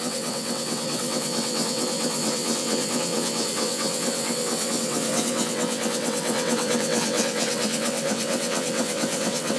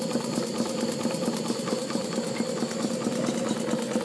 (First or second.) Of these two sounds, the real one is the second